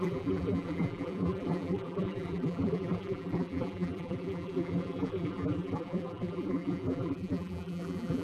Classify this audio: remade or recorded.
remade